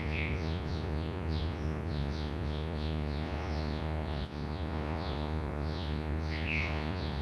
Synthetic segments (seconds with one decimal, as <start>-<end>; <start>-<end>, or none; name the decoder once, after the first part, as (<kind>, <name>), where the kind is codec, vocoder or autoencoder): 0.0-7.2 (vocoder, Vocos)